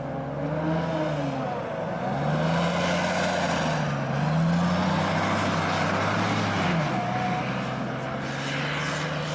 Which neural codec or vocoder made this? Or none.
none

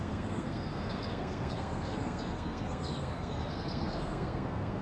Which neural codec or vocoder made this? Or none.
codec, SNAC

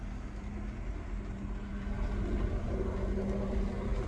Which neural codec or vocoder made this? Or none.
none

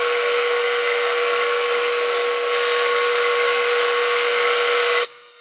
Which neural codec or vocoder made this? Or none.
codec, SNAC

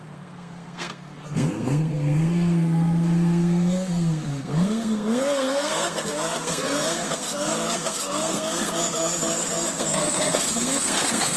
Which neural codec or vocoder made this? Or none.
codec, SNAC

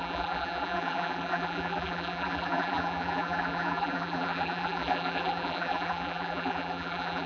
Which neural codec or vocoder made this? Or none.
vocoder, BigVGAN v2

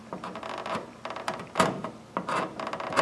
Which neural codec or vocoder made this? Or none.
none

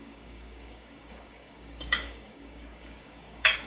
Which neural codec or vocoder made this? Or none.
codec, DAC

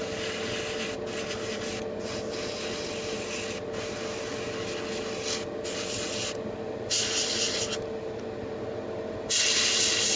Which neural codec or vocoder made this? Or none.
none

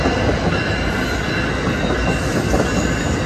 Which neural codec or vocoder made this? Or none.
none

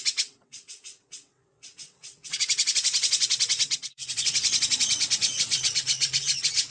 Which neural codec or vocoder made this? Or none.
vocoder, WaveNeXt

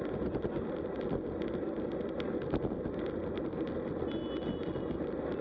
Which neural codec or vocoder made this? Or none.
none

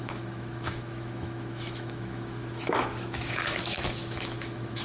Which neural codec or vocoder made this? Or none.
autoencoder, DAC-VAE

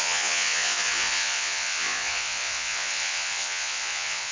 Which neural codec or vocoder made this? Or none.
vocoder, Vocos